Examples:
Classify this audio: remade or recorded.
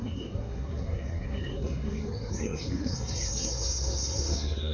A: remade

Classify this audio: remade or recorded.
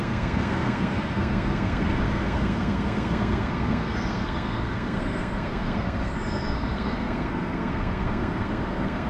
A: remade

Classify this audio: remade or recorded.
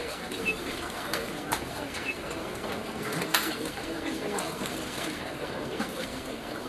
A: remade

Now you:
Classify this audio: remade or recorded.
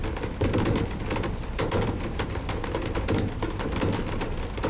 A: recorded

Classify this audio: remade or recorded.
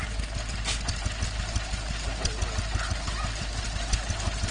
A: recorded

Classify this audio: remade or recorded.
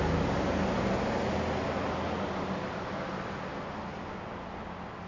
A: recorded